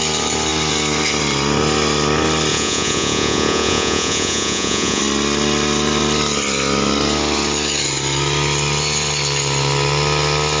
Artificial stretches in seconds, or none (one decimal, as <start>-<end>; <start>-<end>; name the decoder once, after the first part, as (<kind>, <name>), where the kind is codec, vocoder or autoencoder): 2.5-5.0 (vocoder, Vocos)